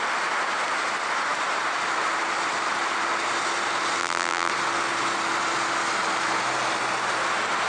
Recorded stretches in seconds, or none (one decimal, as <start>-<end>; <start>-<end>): 0.0-4.0; 4.5-7.7